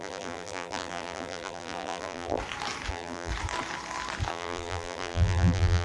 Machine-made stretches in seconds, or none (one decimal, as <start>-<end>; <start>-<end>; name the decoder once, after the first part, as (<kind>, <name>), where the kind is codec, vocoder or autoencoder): 0.0-2.4 (vocoder, BigVGAN v2); 2.9-3.3; 4.3-5.8